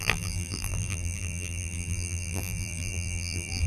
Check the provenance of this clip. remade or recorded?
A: remade